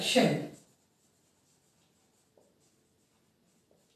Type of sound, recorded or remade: recorded